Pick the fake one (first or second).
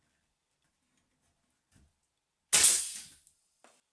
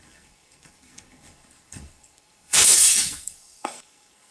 second